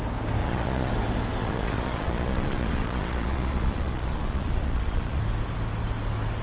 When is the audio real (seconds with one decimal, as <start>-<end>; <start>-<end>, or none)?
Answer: 0.0-0.4; 0.9-1.4; 5.2-6.4